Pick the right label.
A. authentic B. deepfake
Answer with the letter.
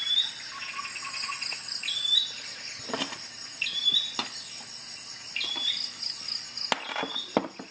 A